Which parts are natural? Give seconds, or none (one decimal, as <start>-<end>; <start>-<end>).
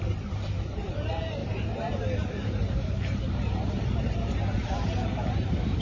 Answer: none